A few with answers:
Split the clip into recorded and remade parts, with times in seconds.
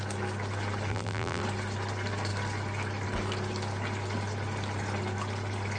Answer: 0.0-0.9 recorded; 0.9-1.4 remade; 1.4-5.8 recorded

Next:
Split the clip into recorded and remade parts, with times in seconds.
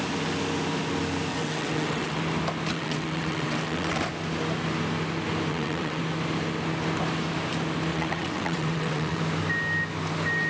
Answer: 0.0-1.3 recorded; 1.3-2.2 remade; 2.2-2.7 recorded; 2.7-4.0 remade; 4.0-5.5 recorded; 5.5-6.0 remade; 6.0-7.9 recorded; 7.9-9.2 remade; 9.2-10.5 recorded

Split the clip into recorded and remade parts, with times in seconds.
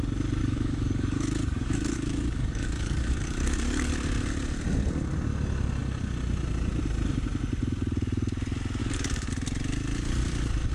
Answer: 0.0-0.4 recorded; 0.4-3.9 remade; 3.9-8.8 recorded; 8.8-9.3 remade; 9.3-10.7 recorded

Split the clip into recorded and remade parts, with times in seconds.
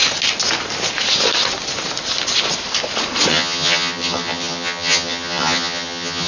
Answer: 0.0-3.3 recorded; 3.3-6.3 remade